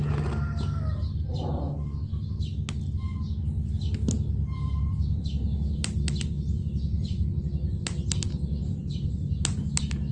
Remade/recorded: recorded